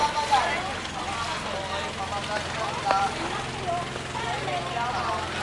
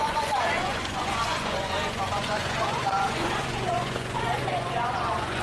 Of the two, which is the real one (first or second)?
first